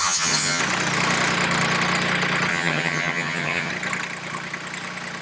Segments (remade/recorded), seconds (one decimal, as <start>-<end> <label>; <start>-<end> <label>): 0.0-0.6 remade; 0.6-2.5 recorded; 2.5-3.7 remade; 3.7-5.2 recorded